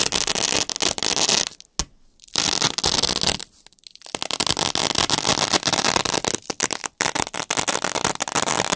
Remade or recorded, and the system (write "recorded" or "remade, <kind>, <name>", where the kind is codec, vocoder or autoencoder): recorded